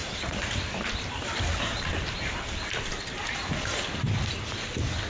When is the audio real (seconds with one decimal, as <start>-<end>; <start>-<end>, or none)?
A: 3.1-5.1